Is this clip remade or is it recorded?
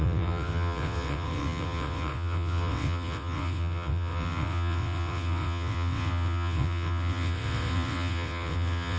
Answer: remade